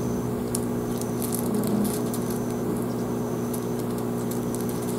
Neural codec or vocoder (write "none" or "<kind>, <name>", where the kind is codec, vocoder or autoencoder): none